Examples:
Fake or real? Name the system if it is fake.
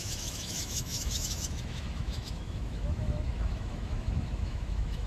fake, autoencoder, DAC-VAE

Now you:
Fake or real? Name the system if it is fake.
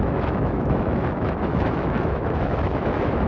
fake, autoencoder, DAC-VAE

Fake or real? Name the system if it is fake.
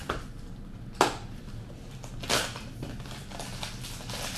real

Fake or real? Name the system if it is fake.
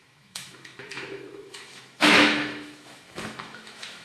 fake, autoencoder, DAC-VAE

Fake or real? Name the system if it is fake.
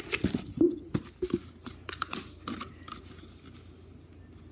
real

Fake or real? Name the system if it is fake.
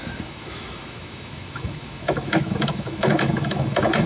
fake, autoencoder, DAC-VAE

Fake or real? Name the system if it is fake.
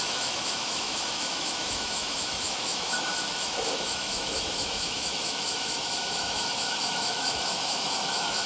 fake, autoencoder, DAC-VAE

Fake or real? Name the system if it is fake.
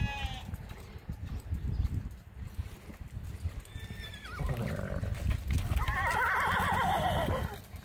real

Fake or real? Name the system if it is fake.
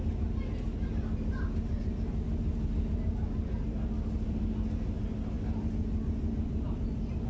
real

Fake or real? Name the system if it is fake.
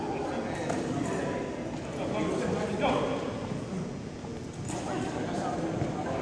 real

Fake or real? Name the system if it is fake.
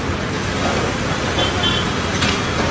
real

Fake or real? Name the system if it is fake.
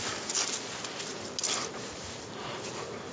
real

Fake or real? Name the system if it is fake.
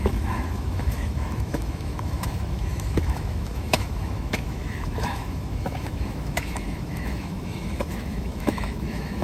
fake, autoencoder, DAC-VAE